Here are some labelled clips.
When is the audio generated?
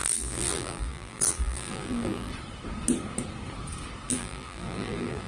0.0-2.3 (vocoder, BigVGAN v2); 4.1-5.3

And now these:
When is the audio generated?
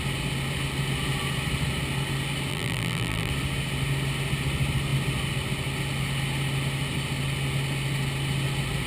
2.5-3.3 (vocoder, BigVGAN v2)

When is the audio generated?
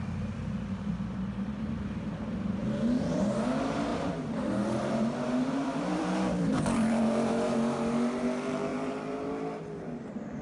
3.9-7.0 (vocoder, BigVGAN v2); 8.7-9.3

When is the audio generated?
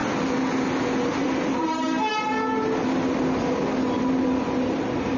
1.0-2.1 (vocoder, BigVGAN v2); 4.6-5.2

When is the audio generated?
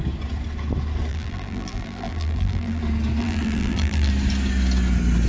1.1-2.8 (vocoder, BigVGAN v2); 3.2-4.1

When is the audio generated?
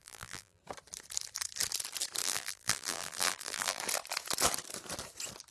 0.0-0.6 (vocoder, BigVGAN v2); 2.2-3.8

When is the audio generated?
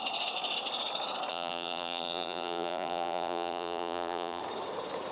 1.3-4.4 (vocoder, BigVGAN v2)